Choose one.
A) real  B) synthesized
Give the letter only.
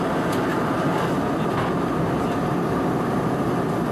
A